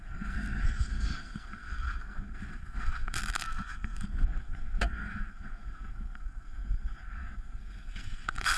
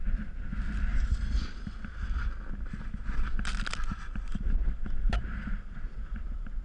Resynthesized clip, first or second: first